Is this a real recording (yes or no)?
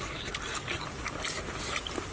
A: yes